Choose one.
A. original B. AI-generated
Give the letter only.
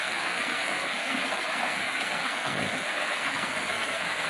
B